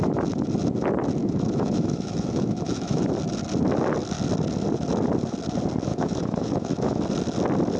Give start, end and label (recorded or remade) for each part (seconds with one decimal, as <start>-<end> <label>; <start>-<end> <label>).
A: 0.0-1.2 recorded; 1.2-3.0 remade; 3.0-5.9 recorded; 5.9-7.0 remade; 7.0-7.8 recorded